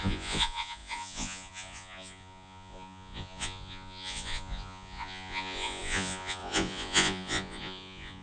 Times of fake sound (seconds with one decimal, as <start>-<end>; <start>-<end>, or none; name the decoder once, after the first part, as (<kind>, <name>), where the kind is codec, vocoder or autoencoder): 0.0-8.2 (vocoder, Vocos)